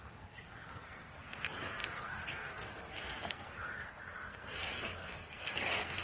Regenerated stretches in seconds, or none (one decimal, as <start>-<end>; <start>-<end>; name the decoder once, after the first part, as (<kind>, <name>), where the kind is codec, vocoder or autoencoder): 0.0-6.0 (codec, SNAC)